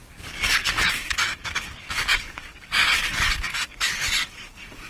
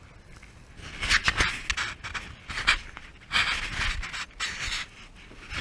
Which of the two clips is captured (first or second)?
second